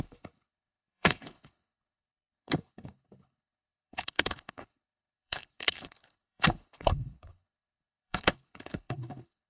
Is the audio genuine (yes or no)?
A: no